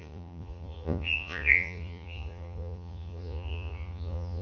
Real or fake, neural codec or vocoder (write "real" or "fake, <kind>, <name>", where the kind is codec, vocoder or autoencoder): fake, vocoder, Vocos